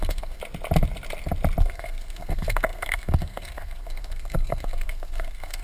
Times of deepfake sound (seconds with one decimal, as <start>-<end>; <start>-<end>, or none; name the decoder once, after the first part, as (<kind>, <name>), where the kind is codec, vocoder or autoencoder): 0.0-0.4 (codec, SNAC); 1.6-5.6